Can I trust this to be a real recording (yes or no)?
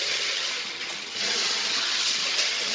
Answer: no